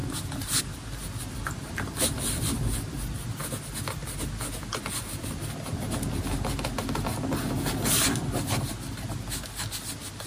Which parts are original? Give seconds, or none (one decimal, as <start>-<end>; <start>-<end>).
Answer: 0.0-10.3